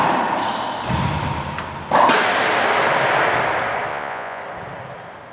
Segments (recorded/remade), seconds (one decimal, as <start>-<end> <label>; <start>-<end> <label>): 0.0-3.9 recorded; 3.9-4.4 remade; 4.4-5.3 recorded